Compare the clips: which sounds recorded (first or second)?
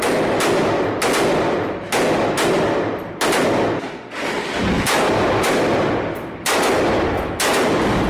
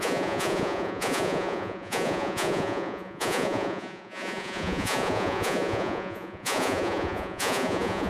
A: first